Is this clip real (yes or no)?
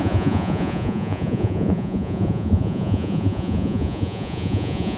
no